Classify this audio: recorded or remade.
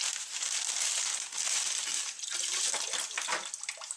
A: recorded